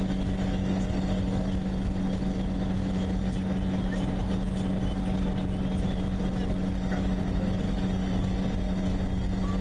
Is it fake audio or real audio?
real